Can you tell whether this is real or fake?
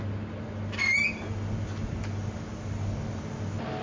real